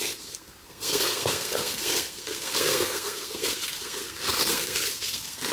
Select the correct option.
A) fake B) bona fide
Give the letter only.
A